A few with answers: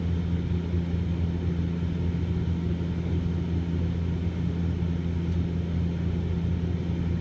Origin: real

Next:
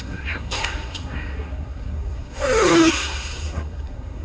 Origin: fake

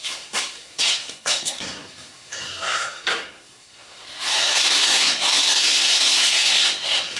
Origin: fake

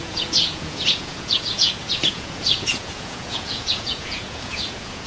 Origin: fake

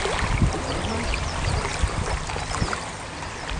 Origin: real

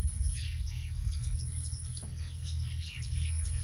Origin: fake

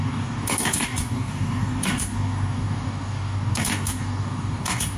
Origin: fake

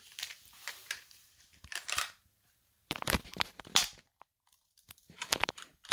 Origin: fake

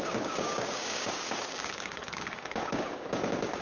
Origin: fake